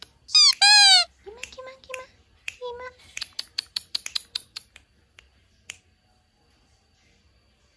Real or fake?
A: real